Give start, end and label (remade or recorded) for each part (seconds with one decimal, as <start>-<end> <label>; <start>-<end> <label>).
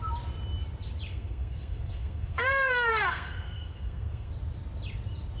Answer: 0.0-1.1 recorded; 1.1-4.3 remade; 4.3-5.4 recorded